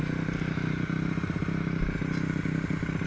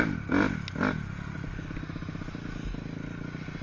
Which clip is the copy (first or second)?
first